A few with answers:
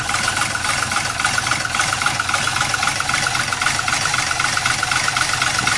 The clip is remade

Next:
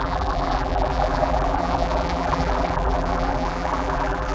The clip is remade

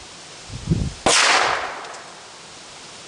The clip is recorded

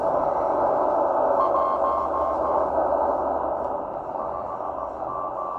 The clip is recorded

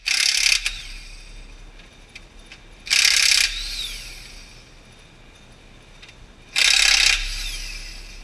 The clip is recorded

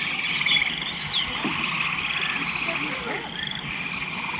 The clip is recorded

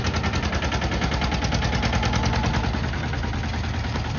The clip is recorded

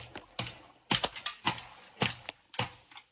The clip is recorded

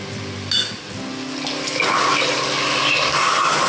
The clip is recorded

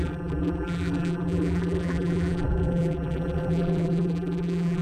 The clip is remade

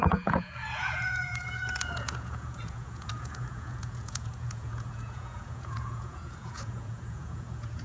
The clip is remade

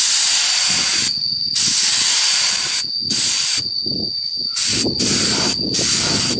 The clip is recorded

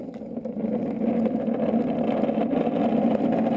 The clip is recorded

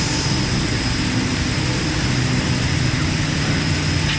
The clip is recorded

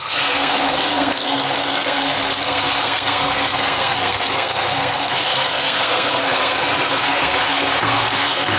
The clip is remade